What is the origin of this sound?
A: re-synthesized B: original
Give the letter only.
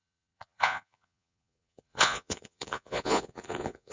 A